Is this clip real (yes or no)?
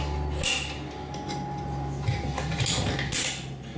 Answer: yes